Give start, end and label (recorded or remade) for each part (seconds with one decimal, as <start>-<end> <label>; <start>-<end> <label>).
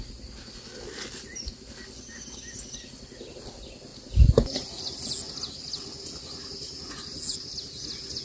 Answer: 0.0-8.2 recorded